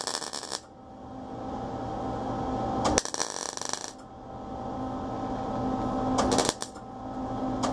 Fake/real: real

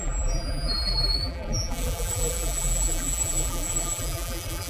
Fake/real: fake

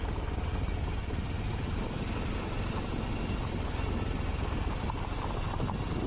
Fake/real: real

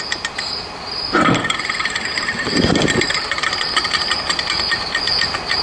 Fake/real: real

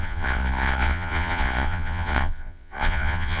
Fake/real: fake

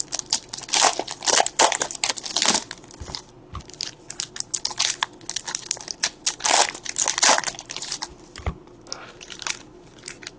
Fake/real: real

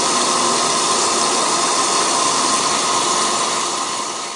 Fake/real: fake